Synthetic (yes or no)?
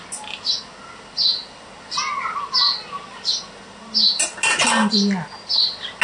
no